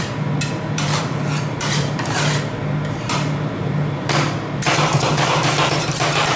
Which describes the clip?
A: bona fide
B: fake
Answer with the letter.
B